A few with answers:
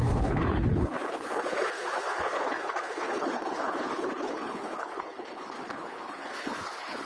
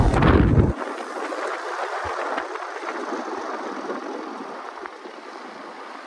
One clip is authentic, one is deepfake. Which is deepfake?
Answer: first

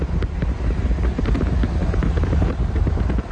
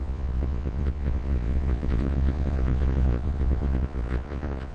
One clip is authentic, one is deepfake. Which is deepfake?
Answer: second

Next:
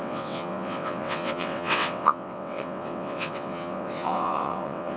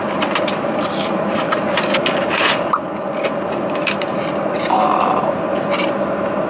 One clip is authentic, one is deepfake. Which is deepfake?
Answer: first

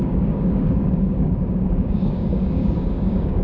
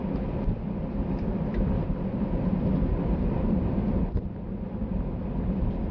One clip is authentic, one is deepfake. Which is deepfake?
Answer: first